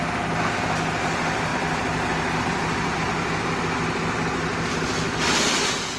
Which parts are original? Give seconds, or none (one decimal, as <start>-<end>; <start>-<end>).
0.0-6.0